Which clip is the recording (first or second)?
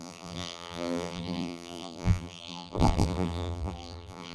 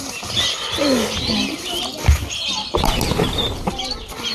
second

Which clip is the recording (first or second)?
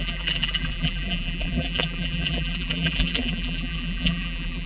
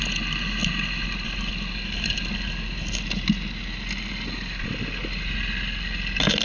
second